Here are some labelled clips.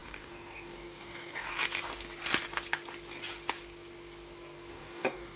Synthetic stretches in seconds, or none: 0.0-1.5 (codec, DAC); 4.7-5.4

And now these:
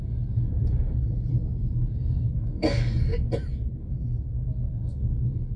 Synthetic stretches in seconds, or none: 0.0-0.5 (codec, DAC); 1.6-3.1; 4.7-5.6

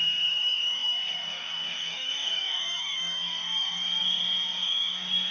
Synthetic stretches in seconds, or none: 0.0-5.3 (codec, DAC)

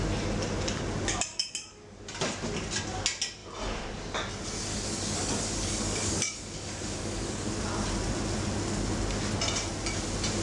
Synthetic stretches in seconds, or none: 1.3-2.0 (codec, DAC); 4.7-7.5

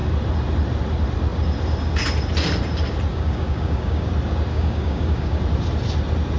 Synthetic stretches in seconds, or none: 3.1-4.1 (codec, DAC); 4.5-5.4

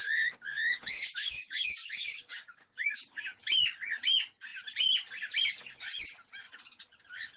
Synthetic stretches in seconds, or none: 0.0-3.2 (codec, DAC)

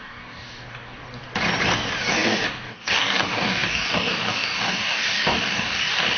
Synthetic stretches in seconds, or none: 0.0-1.3 (codec, DAC); 2.1-6.2